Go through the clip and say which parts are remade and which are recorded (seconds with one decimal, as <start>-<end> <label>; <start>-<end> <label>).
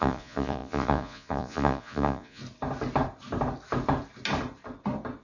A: 0.0-2.4 remade; 2.4-5.2 recorded